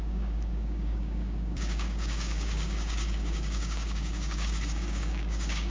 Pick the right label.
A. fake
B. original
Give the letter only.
A